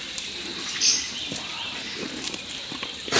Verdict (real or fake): fake